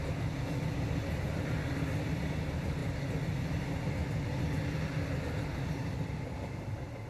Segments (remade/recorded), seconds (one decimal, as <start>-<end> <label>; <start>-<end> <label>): 0.0-7.1 recorded